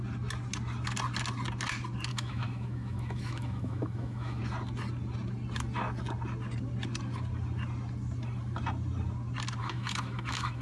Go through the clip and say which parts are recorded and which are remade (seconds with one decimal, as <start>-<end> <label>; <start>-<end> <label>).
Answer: 0.0-2.1 recorded; 2.1-4.4 remade; 4.4-9.6 recorded; 9.6-10.6 remade